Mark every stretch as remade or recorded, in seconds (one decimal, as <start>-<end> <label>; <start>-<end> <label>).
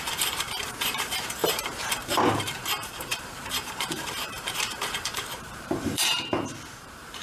0.0-7.2 remade